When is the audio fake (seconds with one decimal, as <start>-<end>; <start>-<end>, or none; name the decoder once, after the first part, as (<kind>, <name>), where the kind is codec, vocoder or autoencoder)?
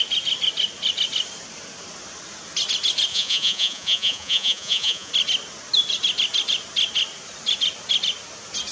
3.1-5.1 (vocoder, Vocos)